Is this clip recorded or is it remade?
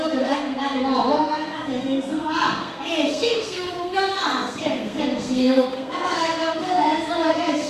remade